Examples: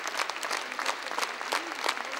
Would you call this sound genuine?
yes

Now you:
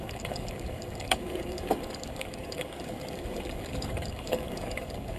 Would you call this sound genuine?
no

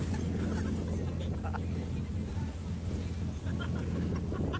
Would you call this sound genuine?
yes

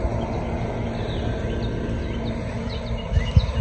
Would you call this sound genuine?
yes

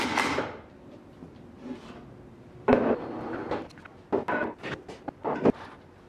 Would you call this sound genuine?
yes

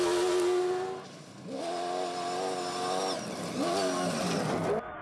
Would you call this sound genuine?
yes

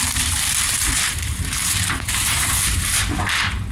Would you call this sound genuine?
no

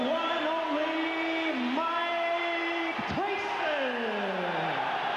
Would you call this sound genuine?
yes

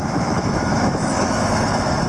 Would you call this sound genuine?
no